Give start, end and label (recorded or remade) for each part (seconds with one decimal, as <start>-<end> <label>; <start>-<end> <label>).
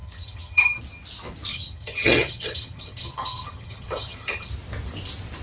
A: 0.0-0.8 remade; 0.8-1.5 recorded; 1.5-4.5 remade; 4.5-5.4 recorded